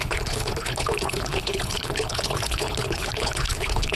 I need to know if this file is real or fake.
fake